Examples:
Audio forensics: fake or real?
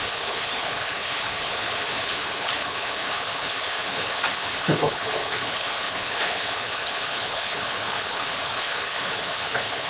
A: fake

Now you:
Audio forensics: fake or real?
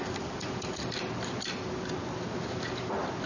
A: real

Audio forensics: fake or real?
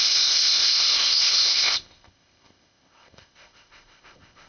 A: fake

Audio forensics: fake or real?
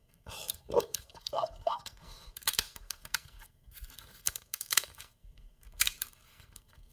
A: fake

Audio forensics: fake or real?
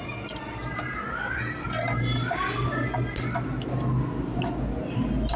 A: real